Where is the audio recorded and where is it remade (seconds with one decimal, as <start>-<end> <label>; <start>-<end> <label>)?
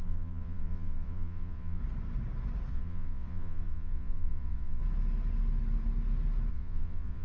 0.0-1.8 remade; 1.8-2.7 recorded; 2.7-4.8 remade; 4.8-6.5 recorded; 6.5-7.2 remade